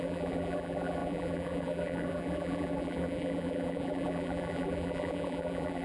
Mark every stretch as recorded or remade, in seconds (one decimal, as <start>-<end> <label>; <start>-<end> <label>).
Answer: 0.0-5.8 remade